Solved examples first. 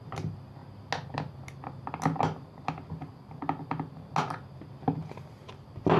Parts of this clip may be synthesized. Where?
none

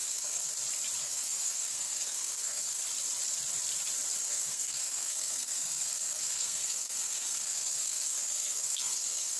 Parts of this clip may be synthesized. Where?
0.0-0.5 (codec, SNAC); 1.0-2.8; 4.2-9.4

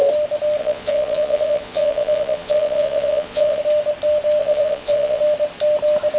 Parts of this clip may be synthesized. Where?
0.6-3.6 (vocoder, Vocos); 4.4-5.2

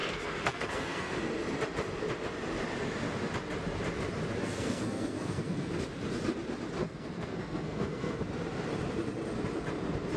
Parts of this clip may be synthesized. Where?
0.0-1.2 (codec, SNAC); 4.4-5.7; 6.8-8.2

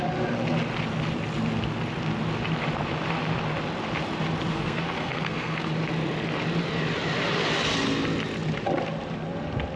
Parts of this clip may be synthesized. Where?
4.5-5.7 (codec, SNAC)